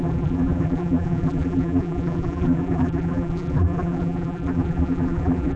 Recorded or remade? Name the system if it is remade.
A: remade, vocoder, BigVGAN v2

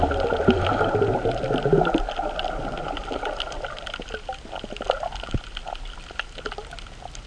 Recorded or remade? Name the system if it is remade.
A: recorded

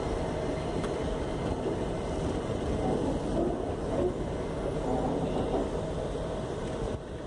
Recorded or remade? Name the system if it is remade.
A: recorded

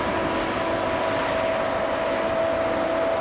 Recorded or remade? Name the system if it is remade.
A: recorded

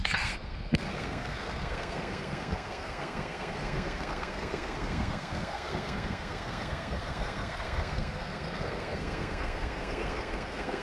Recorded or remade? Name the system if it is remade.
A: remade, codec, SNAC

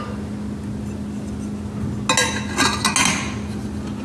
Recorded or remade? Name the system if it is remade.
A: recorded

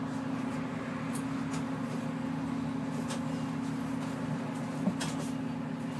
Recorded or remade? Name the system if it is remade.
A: recorded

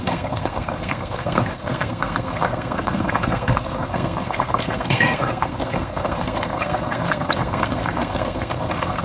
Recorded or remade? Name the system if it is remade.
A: remade, codec, SNAC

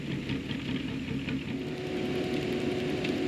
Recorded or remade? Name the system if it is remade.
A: recorded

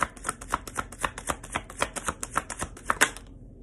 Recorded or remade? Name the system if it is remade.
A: recorded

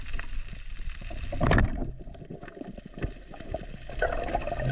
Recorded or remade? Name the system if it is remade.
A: remade, vocoder, BigVGAN v2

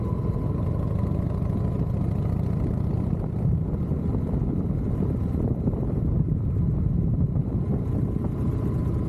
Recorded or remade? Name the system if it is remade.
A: recorded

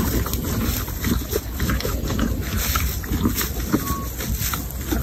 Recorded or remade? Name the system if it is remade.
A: recorded